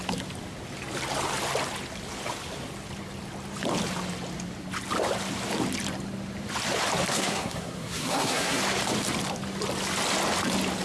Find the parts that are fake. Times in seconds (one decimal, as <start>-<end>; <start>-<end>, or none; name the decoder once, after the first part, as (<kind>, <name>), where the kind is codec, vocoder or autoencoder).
7.1-8.6 (codec, SNAC)